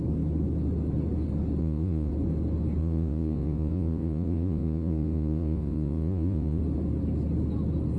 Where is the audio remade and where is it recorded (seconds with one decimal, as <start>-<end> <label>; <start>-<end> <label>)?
0.0-1.6 recorded; 1.6-2.1 remade; 2.1-2.8 recorded; 2.8-6.6 remade; 6.6-8.0 recorded